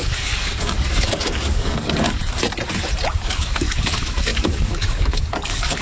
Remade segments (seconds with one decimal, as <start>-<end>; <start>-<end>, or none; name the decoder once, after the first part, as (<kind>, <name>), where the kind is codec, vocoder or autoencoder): 0.0-2.2 (codec, DAC); 3.1-5.8